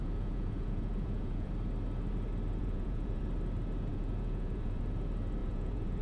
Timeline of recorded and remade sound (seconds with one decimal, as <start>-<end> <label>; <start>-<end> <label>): 0.0-1.5 remade; 1.5-2.6 recorded; 2.6-3.2 remade; 3.2-3.9 recorded; 3.9-4.8 remade; 4.8-5.4 recorded; 5.4-6.0 remade